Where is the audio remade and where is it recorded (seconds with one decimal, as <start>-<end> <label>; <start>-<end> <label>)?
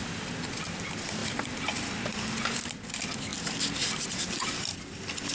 0.0-5.3 recorded